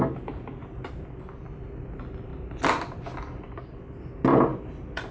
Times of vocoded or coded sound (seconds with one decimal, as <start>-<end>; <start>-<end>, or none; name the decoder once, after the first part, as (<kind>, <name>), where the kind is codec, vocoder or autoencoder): 2.3-3.7 (vocoder, BigVGAN v2); 4.5-5.1